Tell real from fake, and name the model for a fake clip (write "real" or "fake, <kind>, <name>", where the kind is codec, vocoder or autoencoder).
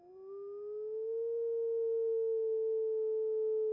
real